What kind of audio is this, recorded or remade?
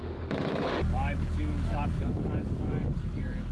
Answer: remade